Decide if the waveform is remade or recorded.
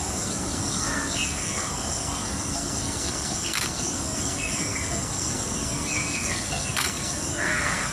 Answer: remade